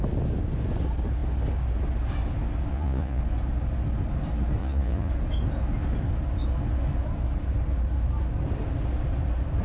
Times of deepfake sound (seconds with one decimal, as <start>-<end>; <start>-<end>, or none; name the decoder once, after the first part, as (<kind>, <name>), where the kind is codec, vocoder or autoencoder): 2.7-3.2 (vocoder, Vocos); 4.6-5.1